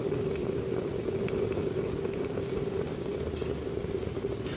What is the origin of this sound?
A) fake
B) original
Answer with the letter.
B